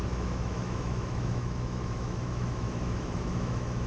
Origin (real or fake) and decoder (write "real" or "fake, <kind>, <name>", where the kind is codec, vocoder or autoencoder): fake, autoencoder, DAC-VAE